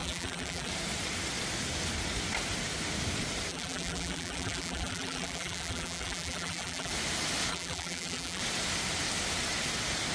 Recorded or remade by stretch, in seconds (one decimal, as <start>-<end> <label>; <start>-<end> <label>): 0.0-0.7 remade; 0.7-3.5 recorded; 3.5-6.9 remade; 6.9-7.5 recorded; 7.5-8.4 remade; 8.4-10.1 recorded